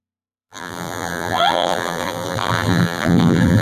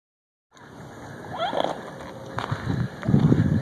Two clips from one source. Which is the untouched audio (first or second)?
second